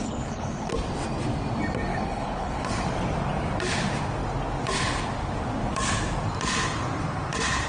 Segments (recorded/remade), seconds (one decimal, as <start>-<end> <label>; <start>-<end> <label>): 0.0-0.7 remade; 0.7-1.9 recorded; 1.9-2.7 remade; 2.7-7.7 recorded